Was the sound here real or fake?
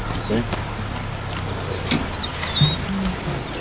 real